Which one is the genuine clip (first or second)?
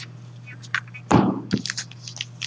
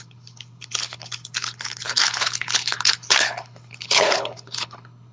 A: first